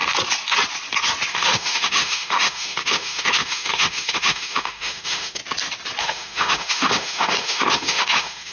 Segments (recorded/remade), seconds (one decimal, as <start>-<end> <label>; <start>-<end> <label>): 0.0-1.3 recorded; 1.3-5.4 remade; 5.4-6.0 recorded; 6.0-8.5 remade